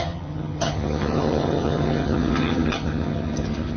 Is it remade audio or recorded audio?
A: remade